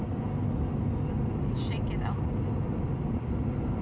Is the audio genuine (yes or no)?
yes